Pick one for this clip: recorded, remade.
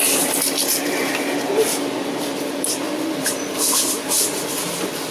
recorded